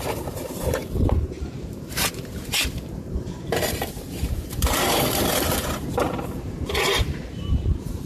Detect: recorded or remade remade